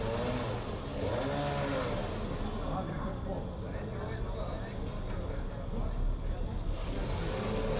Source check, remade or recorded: recorded